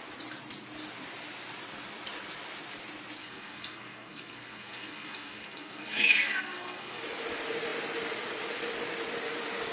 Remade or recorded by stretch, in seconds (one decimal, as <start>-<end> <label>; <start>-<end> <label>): 0.0-3.2 recorded; 3.2-7.0 remade; 7.0-9.7 recorded